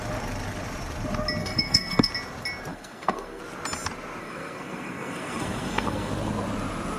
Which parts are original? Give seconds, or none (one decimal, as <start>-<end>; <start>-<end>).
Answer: 0.0-1.4; 2.1-2.7; 3.4-4.2; 6.1-7.0

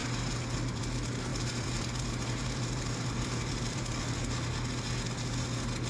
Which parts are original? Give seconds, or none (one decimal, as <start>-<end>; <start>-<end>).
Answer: 0.0-1.3; 4.2-5.9

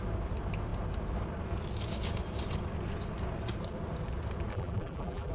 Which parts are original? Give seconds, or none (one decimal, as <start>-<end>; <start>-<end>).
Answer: 0.0-4.5

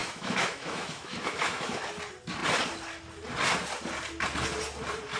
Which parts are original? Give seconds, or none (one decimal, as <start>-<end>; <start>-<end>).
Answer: 1.8-5.2